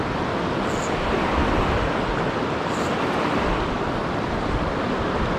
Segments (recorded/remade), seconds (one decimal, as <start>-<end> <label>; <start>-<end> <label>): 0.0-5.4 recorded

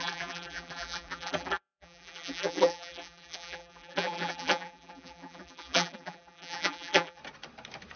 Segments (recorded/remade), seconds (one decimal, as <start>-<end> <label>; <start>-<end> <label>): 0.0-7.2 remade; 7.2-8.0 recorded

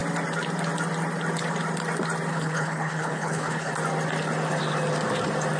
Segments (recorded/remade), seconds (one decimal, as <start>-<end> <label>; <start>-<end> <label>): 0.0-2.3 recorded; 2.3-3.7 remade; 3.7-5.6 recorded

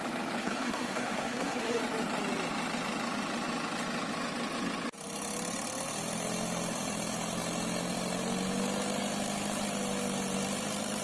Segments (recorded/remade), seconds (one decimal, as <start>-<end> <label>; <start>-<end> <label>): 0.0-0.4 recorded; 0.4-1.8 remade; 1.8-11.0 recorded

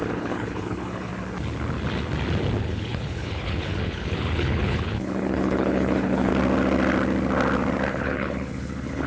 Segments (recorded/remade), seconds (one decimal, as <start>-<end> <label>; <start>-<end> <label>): 0.0-1.1 remade; 1.1-2.6 recorded; 2.6-6.3 remade; 6.3-7.9 recorded; 7.9-9.1 remade

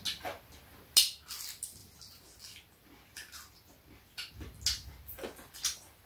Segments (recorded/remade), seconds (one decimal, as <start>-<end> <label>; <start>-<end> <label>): 0.0-6.1 recorded

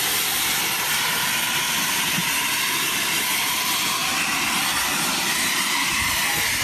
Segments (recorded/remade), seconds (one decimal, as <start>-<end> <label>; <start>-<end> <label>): 0.0-6.6 recorded